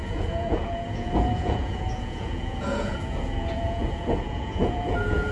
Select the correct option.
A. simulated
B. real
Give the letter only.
A